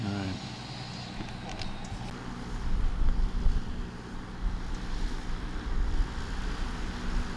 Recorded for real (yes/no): yes